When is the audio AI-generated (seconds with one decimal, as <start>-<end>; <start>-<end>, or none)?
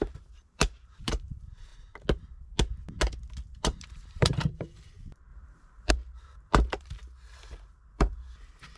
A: 0.0-1.7; 3.5-7.0; 7.8-8.8